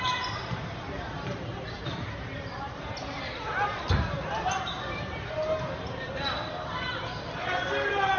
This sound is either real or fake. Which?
fake